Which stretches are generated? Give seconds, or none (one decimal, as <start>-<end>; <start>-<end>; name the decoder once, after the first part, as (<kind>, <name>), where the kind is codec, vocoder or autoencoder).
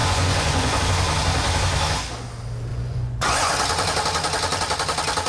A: 0.0-0.8 (vocoder, Vocos); 2.7-3.5